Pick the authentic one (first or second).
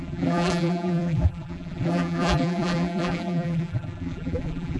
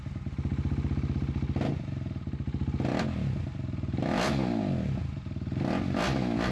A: second